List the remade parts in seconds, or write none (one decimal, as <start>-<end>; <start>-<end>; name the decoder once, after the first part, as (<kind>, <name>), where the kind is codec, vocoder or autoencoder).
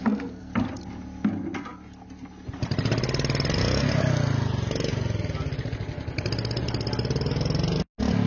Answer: 0.0-0.5 (codec, SNAC)